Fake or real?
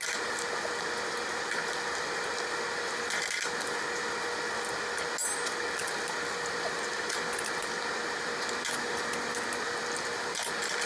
real